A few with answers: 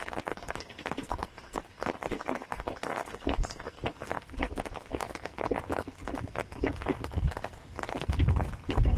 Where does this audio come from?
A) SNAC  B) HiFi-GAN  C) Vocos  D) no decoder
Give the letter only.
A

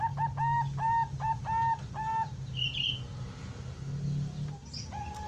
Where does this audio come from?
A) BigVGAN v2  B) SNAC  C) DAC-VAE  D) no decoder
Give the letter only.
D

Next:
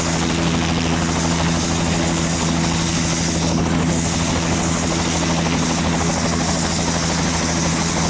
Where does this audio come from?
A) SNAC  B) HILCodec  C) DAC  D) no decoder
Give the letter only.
D